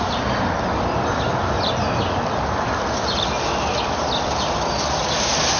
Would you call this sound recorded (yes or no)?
yes